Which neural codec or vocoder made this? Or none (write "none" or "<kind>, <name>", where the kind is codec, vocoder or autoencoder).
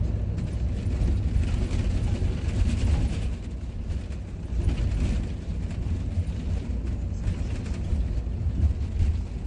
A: none